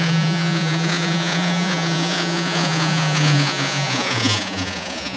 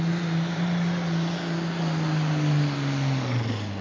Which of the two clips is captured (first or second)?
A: second